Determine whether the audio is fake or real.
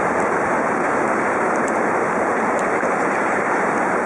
fake